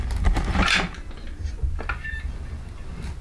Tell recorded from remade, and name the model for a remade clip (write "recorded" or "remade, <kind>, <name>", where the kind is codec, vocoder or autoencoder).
recorded